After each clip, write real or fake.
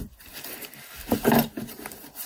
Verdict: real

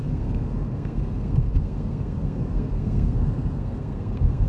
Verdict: fake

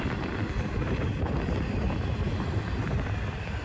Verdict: real